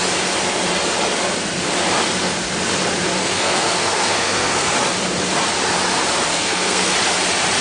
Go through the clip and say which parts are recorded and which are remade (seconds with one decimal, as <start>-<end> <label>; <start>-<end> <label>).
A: 0.0-3.2 recorded; 3.2-4.7 remade; 4.7-6.3 recorded; 6.3-6.9 remade; 6.9-7.6 recorded

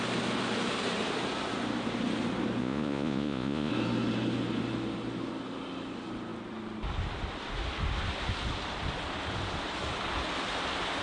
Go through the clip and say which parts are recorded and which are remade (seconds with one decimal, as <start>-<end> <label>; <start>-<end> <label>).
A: 0.0-2.6 recorded; 2.6-3.7 remade; 3.7-11.0 recorded